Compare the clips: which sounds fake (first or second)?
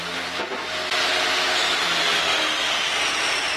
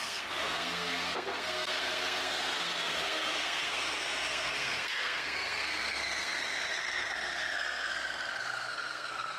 second